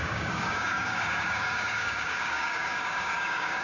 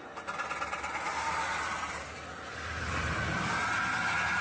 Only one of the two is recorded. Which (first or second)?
second